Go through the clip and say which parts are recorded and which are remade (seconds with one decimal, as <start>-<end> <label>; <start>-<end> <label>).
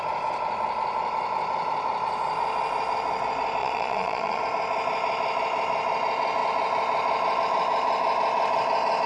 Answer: 0.0-3.6 recorded; 3.6-4.4 remade; 4.4-9.1 recorded